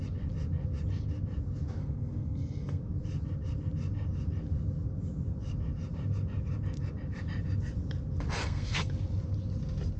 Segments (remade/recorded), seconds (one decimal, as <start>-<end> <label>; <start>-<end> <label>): 0.0-1.8 recorded; 1.8-2.8 remade; 2.8-8.4 recorded; 8.4-8.9 remade; 8.9-10.0 recorded

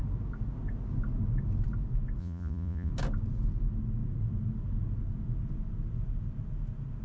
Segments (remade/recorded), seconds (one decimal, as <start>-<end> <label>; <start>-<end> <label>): 0.0-2.2 recorded; 2.2-2.9 remade; 2.9-7.0 recorded

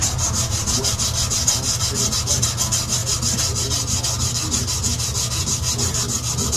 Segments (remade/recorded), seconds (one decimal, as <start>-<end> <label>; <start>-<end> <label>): 0.0-0.9 remade; 0.9-6.6 recorded